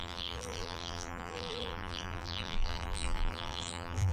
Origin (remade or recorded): remade